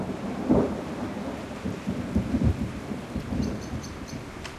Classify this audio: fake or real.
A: fake